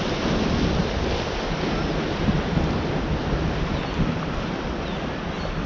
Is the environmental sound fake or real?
real